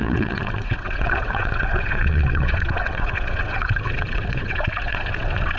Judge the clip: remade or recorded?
remade